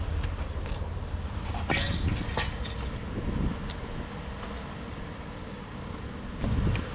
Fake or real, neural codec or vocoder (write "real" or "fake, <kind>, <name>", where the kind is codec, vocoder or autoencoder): real